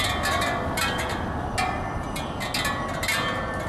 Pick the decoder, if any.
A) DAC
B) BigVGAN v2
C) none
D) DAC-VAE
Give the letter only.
C